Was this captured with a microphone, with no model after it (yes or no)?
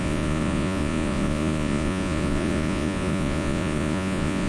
no